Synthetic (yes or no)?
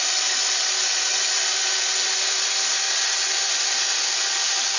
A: no